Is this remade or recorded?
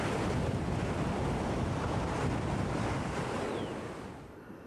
recorded